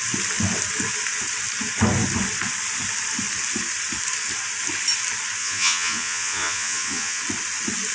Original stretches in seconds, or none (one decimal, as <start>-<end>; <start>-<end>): 0.0-5.4; 7.2-7.9